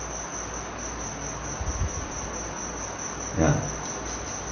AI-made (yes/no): no